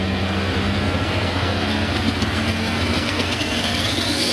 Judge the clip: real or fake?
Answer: fake